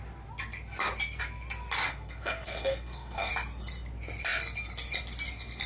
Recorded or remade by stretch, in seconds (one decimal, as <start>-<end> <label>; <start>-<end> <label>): 0.0-1.9 recorded; 1.9-3.3 remade; 3.3-5.7 recorded